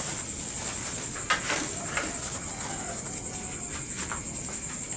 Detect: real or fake real